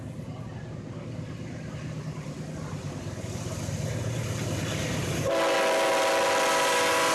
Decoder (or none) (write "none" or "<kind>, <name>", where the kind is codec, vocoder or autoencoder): none